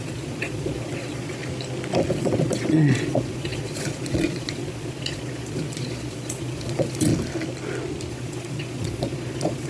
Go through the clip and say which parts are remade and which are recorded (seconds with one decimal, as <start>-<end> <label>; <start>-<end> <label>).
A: 0.0-1.4 remade; 1.4-2.1 recorded; 2.1-7.1 remade; 7.1-8.1 recorded; 8.1-9.7 remade